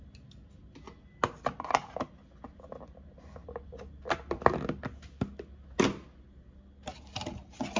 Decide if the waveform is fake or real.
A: real